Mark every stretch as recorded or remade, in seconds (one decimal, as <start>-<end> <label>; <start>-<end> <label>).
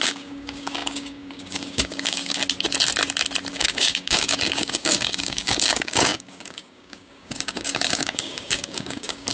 0.0-2.4 remade; 2.4-3.5 recorded; 3.5-9.3 remade